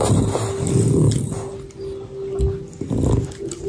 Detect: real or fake real